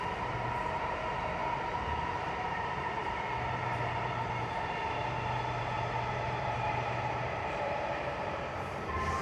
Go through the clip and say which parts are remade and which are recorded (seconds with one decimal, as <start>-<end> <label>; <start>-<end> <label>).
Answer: 0.0-9.2 remade